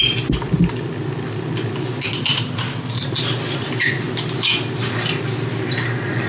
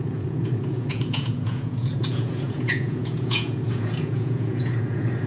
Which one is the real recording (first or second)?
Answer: first